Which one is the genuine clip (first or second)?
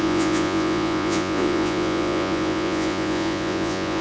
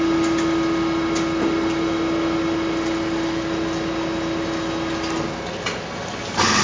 second